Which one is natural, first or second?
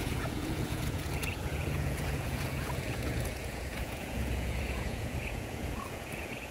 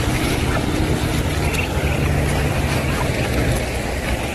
second